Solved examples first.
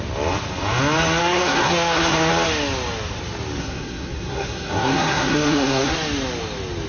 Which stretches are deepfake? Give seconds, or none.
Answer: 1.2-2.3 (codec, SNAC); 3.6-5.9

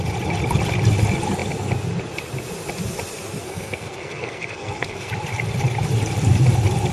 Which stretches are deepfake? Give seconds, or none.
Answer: 3.4-5.1 (codec, SNAC)

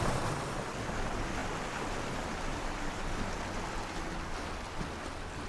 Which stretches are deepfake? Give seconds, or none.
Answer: none